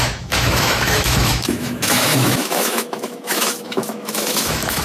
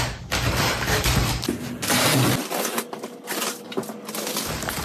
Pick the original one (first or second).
second